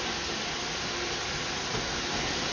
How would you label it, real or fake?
real